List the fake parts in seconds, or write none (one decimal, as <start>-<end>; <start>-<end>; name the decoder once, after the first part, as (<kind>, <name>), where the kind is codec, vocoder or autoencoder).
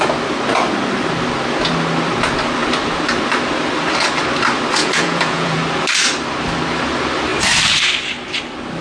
4.8-5.6 (vocoder, Vocos)